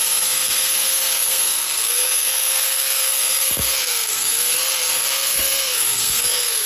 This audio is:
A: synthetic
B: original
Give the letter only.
A